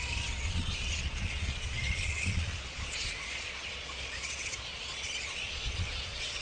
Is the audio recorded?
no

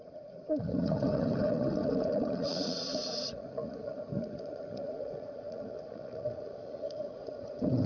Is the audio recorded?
no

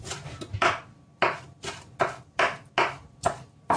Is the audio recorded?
yes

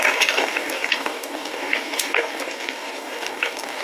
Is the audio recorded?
no